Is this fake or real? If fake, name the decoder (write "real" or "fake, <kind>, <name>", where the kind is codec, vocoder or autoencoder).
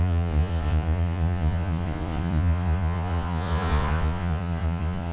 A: fake, vocoder, Vocos